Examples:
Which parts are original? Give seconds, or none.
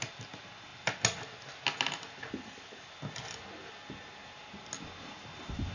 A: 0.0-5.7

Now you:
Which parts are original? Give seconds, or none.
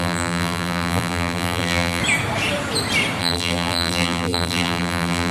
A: 2.0-3.2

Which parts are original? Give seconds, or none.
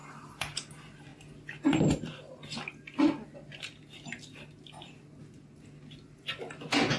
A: 0.0-7.0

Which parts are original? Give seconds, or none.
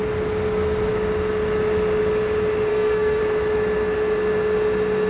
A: 0.0-2.7; 3.2-5.1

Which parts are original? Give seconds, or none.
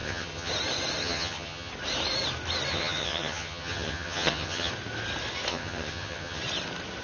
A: 0.5-1.0; 1.7-2.7; 4.7-5.5; 6.4-7.0